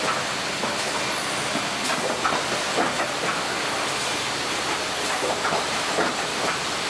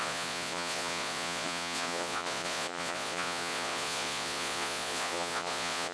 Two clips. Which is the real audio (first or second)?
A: first